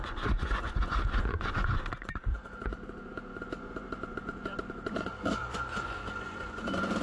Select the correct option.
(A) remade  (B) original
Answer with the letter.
A